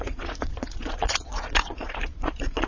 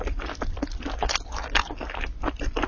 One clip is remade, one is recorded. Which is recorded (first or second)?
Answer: second